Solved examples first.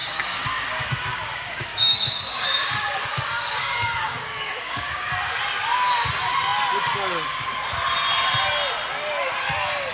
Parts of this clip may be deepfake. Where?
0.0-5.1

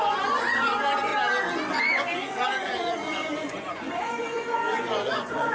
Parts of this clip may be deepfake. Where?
0.0-1.1; 1.7-5.5

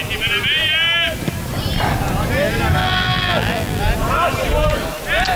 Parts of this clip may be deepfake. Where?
2.8-3.8

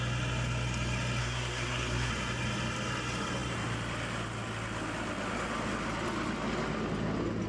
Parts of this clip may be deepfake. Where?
1.2-2.1

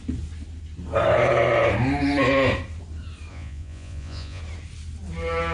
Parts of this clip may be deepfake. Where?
3.3-4.4

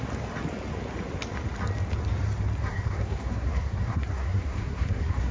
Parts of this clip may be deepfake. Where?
2.6-5.3

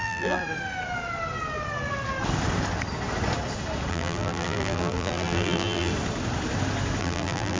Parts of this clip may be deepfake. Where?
0.0-0.4; 3.9-5.9; 7.0-7.6

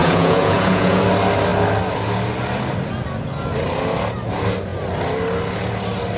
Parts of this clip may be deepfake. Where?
0.0-1.0